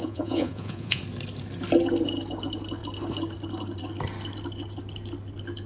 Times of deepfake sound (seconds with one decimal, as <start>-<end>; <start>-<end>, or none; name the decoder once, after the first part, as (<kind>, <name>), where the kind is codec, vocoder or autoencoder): 0.0-1.0 (vocoder, Vocos)